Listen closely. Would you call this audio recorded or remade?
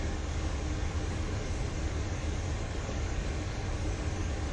remade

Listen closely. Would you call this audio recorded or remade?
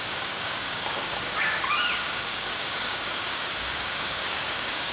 remade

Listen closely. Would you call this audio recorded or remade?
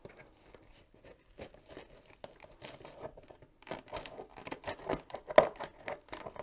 recorded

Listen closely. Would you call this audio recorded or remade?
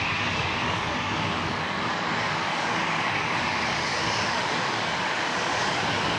remade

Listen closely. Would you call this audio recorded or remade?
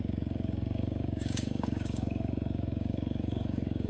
remade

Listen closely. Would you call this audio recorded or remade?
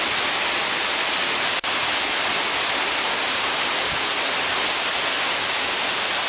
recorded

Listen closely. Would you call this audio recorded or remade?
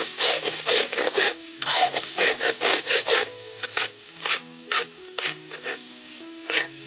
remade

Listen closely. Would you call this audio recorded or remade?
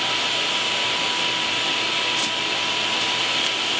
recorded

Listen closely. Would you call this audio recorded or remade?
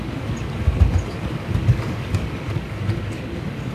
remade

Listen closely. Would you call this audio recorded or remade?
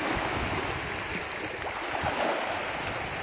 recorded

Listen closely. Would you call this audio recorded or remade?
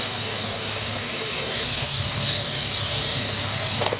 remade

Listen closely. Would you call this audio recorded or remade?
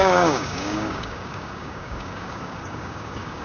remade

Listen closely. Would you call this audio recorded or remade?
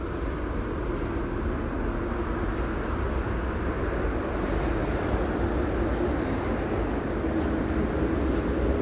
recorded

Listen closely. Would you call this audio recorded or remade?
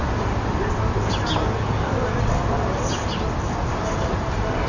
recorded